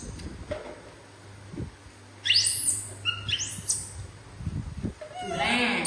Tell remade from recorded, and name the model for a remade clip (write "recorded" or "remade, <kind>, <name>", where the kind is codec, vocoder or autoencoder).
recorded